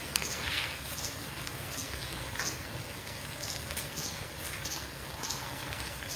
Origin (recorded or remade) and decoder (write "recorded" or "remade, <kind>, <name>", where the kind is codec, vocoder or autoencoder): remade, codec, SNAC